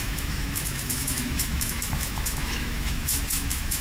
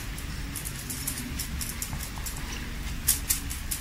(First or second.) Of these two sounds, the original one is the second